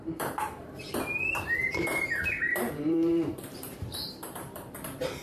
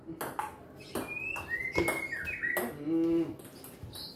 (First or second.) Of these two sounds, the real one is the second